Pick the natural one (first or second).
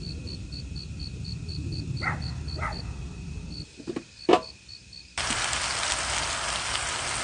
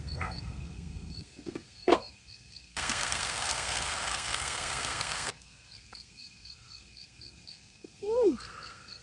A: first